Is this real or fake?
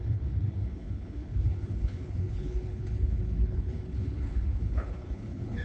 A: fake